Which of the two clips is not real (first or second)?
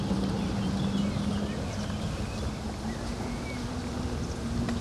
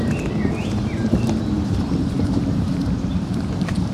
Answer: second